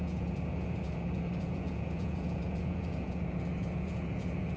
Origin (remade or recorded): remade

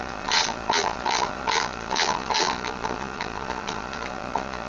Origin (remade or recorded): remade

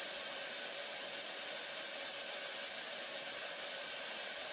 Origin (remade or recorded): recorded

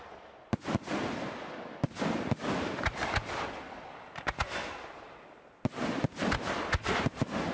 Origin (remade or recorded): recorded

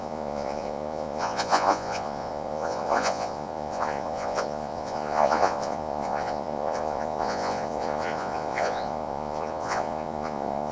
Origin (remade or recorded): remade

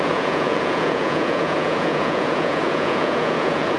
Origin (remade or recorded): remade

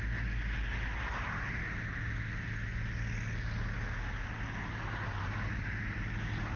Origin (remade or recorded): recorded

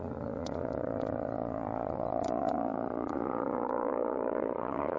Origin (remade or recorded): remade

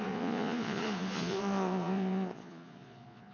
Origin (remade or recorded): remade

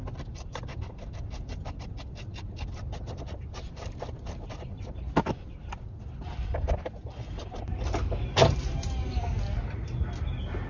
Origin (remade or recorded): recorded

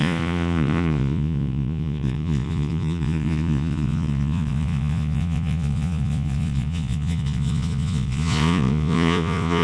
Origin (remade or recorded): remade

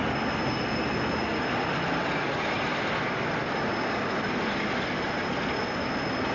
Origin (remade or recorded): recorded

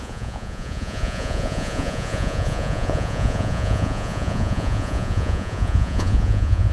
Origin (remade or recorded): remade